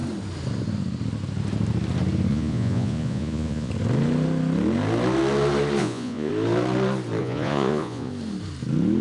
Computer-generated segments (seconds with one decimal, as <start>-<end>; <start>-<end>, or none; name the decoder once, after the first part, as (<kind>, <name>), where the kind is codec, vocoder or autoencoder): 2.3-3.7 (vocoder, Vocos); 5.8-6.3; 7.2-8.1